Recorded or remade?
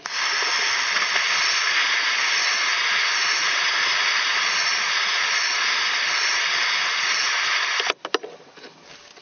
recorded